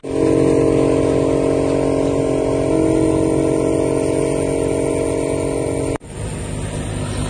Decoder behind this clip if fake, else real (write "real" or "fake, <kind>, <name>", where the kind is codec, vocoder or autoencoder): real